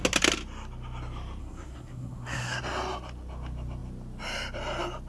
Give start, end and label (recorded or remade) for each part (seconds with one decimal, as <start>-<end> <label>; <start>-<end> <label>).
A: 0.0-1.4 recorded; 1.4-2.6 remade; 2.6-5.1 recorded